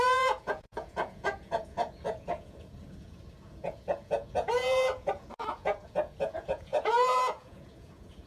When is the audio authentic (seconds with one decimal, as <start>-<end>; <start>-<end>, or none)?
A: none

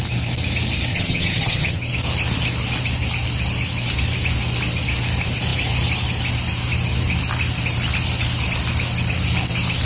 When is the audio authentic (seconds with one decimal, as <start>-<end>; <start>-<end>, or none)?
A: 0.0-0.9; 1.8-9.8